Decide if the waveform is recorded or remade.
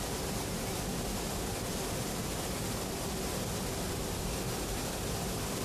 recorded